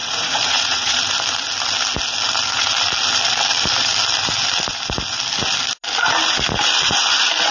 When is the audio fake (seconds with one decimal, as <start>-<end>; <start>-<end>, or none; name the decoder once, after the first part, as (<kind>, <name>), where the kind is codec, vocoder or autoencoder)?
0.0-1.0 (vocoder, Vocos)